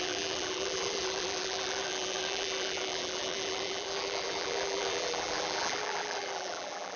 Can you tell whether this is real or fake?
fake